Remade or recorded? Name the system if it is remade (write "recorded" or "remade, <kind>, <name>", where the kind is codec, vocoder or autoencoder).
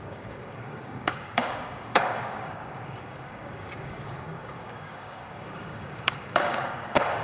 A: remade, codec, DAC